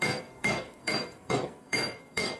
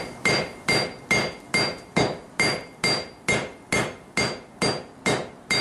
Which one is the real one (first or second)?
second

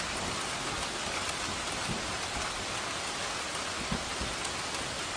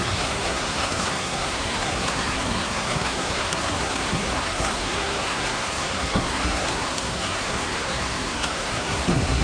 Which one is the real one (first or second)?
first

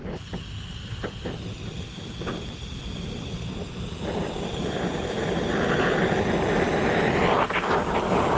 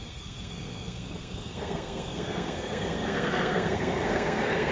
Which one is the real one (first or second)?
first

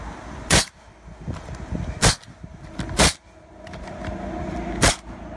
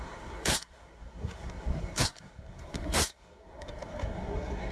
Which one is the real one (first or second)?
first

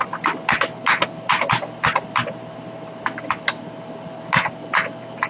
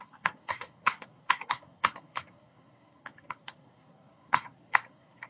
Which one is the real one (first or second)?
first